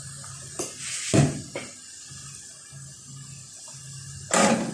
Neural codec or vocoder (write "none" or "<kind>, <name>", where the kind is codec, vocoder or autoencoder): none